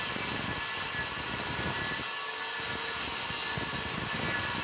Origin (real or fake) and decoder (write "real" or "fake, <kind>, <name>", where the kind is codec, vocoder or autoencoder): real